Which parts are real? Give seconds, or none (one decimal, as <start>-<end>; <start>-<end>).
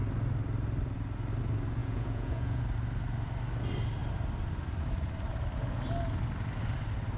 0.0-1.8; 2.6-7.2